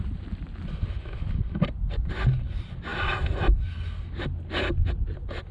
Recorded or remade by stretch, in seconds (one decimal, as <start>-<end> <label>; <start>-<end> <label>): 0.0-5.5 recorded